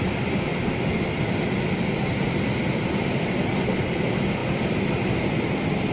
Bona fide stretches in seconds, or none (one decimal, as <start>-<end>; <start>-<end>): 0.5-1.3